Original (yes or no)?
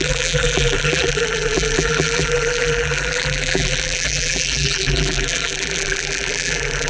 no